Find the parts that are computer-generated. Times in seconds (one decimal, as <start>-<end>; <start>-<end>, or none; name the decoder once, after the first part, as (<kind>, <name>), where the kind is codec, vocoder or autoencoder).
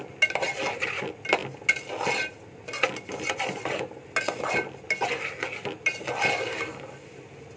none